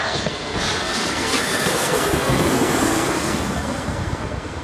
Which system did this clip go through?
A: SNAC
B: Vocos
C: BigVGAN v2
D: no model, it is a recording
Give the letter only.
A